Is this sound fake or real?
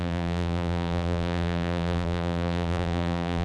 fake